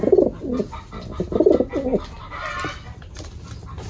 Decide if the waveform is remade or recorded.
recorded